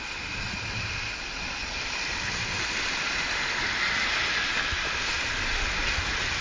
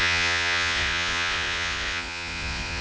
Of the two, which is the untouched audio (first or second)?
first